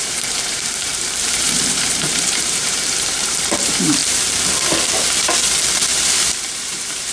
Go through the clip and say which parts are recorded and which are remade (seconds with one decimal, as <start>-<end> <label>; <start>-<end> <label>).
0.0-4.0 remade; 4.0-6.5 recorded; 6.5-7.1 remade